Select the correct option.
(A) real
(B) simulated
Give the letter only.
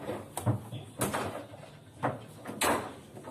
A